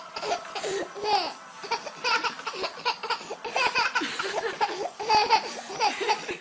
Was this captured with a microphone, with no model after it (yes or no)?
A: yes